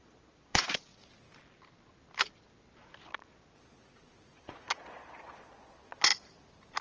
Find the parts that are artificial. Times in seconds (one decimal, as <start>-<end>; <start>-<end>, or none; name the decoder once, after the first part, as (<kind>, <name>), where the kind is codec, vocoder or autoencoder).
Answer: 0.0-0.9 (vocoder, Vocos); 3.1-6.1